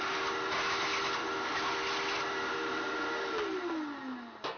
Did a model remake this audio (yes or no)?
no